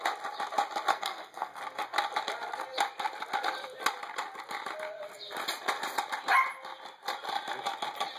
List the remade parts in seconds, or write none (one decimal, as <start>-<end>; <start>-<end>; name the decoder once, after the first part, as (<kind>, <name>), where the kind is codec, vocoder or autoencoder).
0.9-1.6 (codec, SNAC)